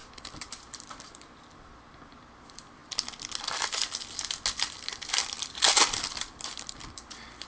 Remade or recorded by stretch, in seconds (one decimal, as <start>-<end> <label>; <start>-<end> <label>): 0.0-2.8 remade; 2.8-4.6 recorded; 4.6-7.5 remade